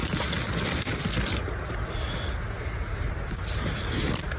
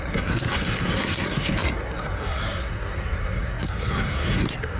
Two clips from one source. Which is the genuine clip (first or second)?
first